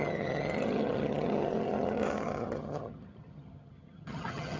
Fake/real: fake